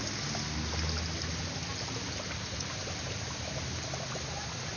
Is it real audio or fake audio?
real